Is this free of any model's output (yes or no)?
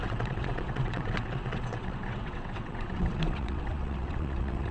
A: no